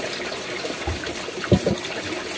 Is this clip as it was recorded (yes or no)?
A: yes